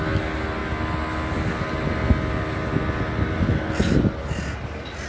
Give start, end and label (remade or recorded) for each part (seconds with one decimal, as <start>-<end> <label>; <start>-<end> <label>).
0.0-5.1 recorded